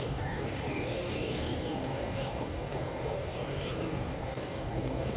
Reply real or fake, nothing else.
fake